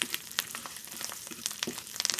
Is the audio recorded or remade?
remade